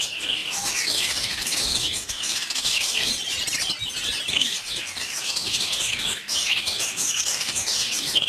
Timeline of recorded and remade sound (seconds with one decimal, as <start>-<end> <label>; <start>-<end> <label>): 0.0-3.1 remade; 3.1-4.3 recorded; 4.3-8.3 remade